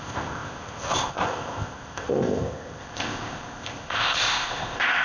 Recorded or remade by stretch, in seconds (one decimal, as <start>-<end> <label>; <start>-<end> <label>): 0.0-5.0 remade